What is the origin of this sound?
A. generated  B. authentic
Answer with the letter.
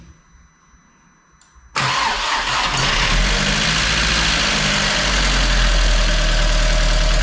B